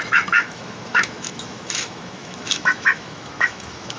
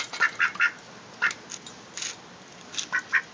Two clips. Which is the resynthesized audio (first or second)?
first